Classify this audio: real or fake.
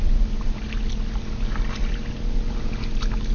real